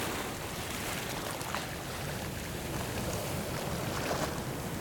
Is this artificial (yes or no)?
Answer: no